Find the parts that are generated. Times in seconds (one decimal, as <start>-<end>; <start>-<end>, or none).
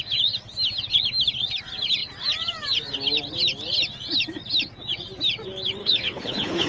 5.8-6.7